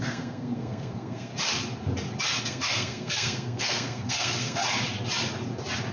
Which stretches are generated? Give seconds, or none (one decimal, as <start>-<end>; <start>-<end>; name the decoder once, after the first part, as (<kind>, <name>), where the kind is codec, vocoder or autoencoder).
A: 0.0-1.3 (codec, SNAC); 2.4-4.6